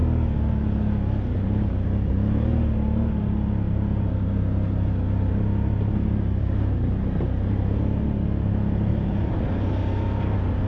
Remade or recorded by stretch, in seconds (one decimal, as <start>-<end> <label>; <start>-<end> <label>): 0.0-8.9 recorded; 8.9-9.7 remade; 9.7-10.7 recorded